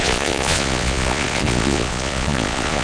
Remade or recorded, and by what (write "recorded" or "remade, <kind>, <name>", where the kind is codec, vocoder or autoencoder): remade, vocoder, Vocos